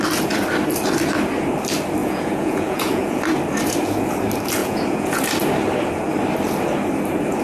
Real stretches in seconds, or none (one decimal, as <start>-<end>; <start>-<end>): 0.0-2.0; 3.2-4.6; 5.2-7.4